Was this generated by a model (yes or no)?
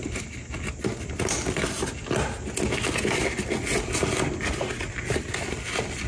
no